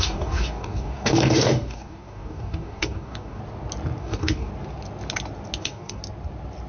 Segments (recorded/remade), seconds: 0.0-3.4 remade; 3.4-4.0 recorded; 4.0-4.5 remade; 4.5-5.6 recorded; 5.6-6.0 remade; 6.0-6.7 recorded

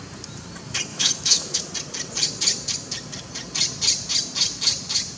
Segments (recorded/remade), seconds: 0.0-0.9 recorded; 0.9-1.6 remade; 1.6-5.2 recorded

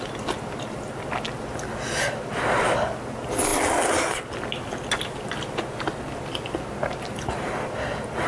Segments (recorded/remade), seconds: 0.0-8.3 recorded

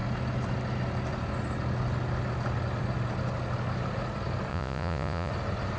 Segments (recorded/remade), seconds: 0.0-4.5 recorded; 4.5-5.3 remade; 5.3-5.8 recorded

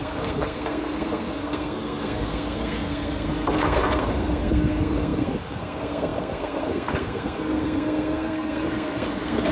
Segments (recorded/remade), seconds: 0.0-9.5 remade

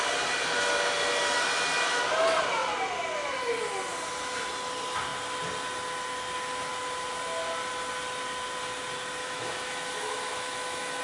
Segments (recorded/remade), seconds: 0.0-9.2 recorded; 9.2-11.0 remade